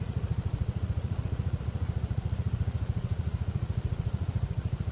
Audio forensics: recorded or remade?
remade